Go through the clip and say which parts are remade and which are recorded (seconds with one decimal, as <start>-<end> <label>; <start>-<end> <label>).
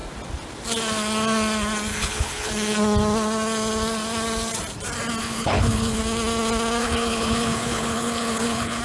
0.0-1.9 recorded; 1.9-2.5 remade; 2.5-5.2 recorded; 5.2-6.0 remade; 6.0-6.8 recorded; 6.8-8.8 remade